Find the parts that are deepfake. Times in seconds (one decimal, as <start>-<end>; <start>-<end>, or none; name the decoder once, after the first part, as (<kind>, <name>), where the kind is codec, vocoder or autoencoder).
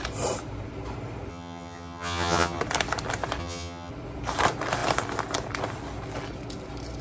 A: 1.3-2.6 (vocoder, HiFi-GAN); 3.4-3.9